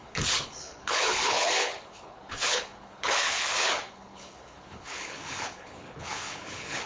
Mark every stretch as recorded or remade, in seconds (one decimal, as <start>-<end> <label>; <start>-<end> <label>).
0.0-6.9 remade